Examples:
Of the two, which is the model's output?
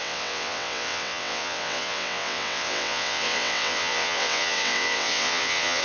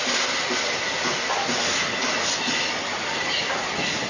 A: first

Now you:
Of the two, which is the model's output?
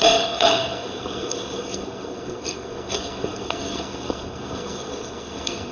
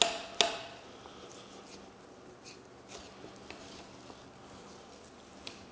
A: first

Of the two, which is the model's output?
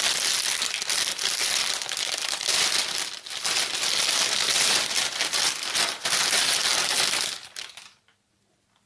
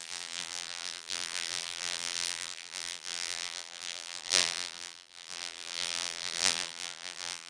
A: second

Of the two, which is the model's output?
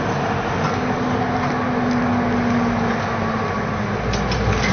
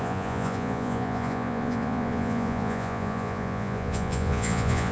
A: second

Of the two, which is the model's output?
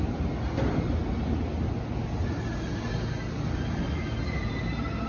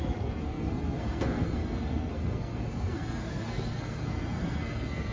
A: second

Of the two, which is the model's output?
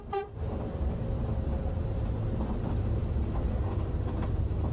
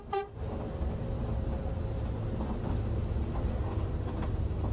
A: first